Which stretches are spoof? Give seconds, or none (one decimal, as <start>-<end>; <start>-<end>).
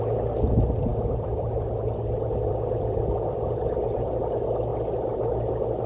0.9-4.2